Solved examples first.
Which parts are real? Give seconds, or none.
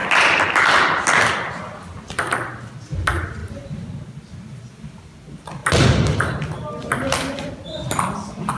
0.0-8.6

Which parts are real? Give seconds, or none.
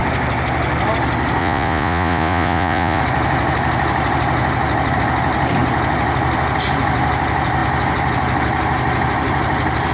0.0-1.4; 3.0-9.9